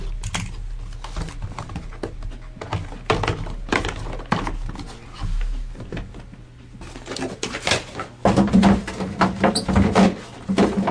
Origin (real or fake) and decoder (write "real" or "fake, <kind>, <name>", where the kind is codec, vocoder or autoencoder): real